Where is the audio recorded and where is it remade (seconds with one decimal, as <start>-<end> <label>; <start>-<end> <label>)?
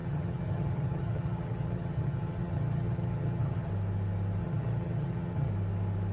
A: 0.0-3.7 remade; 3.7-4.4 recorded; 4.4-5.5 remade; 5.5-6.1 recorded